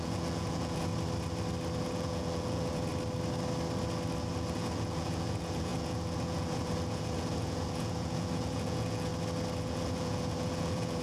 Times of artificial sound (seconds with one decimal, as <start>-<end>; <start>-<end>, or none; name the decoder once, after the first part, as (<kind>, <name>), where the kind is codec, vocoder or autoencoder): 0.0-0.9 (vocoder, Vocos); 1.8-2.9; 4.3-9.1; 9.6-11.0